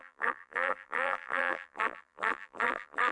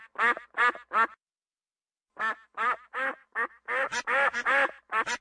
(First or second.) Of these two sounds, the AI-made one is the first